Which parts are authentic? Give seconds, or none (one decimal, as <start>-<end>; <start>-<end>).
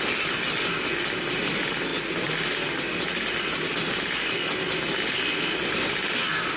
0.0-6.6